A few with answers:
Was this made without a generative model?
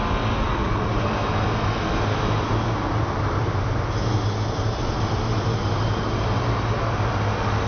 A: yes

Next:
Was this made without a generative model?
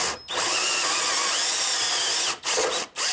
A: yes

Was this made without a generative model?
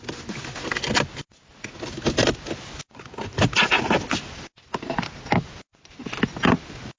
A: yes